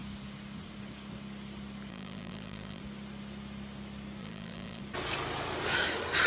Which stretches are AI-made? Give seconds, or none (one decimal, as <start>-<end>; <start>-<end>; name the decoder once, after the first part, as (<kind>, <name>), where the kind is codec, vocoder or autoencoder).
1.9-2.8 (vocoder, BigVGAN v2); 4.2-4.8